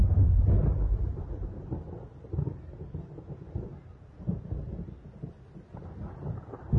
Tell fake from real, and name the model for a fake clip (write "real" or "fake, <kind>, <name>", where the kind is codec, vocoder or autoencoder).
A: real